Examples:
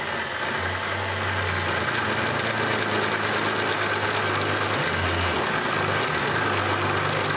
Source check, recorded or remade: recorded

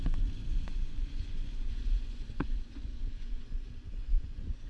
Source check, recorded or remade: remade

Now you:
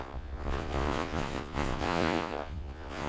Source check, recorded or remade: remade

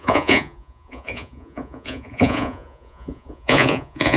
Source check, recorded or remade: remade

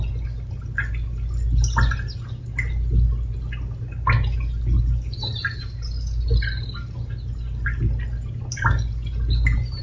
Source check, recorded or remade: recorded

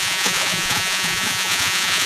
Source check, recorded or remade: remade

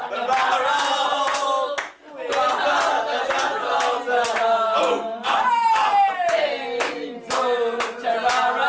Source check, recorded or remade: recorded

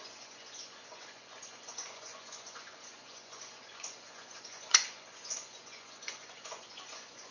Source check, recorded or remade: remade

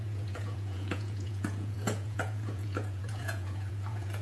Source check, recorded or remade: remade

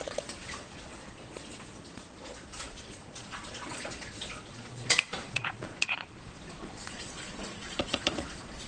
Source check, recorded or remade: remade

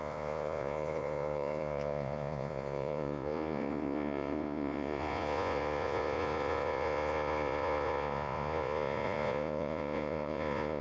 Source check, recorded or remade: remade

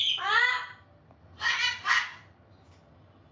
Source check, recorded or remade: recorded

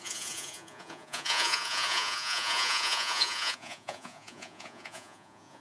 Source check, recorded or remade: remade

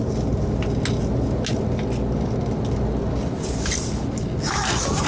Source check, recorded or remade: recorded